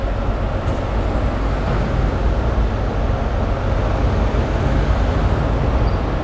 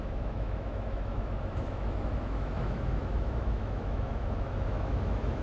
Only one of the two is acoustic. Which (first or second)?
first